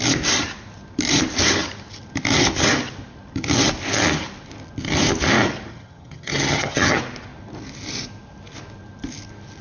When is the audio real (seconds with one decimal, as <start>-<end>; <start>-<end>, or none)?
0.0-5.7; 7.0-9.6